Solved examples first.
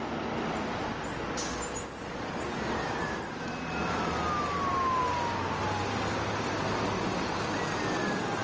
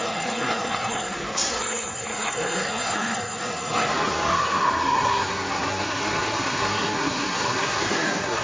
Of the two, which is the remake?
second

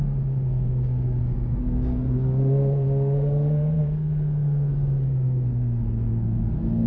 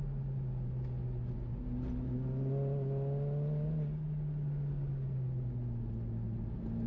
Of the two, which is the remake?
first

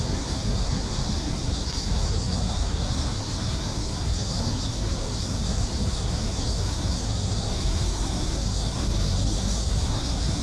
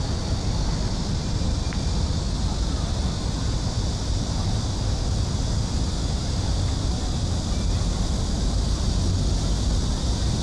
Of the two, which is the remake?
first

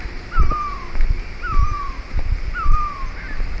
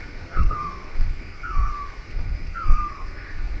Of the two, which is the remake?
second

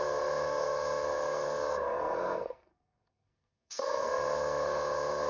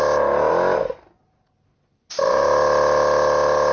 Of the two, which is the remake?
first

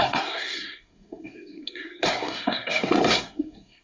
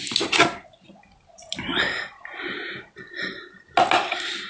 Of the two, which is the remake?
first